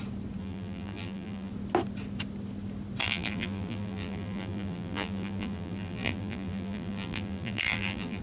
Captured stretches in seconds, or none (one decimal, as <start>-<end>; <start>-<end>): 0.0-0.4; 1.5-3.0